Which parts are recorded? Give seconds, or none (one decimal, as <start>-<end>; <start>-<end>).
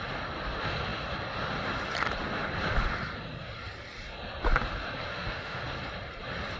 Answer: 0.0-5.1; 5.6-6.6